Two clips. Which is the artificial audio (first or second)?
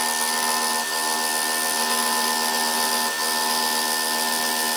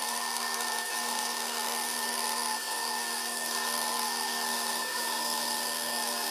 second